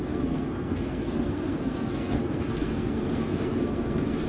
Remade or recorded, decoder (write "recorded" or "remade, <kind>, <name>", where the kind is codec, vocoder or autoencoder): remade, codec, SNAC